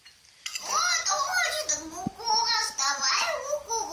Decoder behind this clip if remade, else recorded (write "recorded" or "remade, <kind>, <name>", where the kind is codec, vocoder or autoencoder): recorded